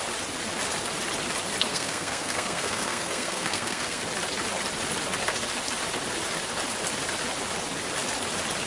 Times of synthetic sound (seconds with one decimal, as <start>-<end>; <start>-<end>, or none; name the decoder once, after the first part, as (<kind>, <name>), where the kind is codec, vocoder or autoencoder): 1.7-4.0 (codec, SNAC)